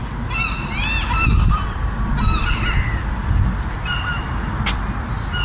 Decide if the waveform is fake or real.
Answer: real